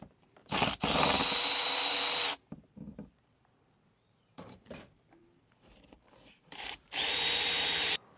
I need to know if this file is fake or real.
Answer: fake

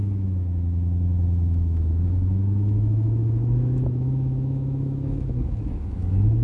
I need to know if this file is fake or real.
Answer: fake